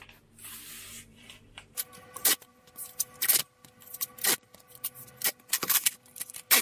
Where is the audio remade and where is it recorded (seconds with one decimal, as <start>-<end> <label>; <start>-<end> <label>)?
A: 0.0-1.1 recorded; 1.1-2.6 remade; 2.6-6.6 recorded